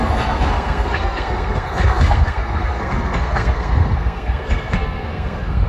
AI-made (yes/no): yes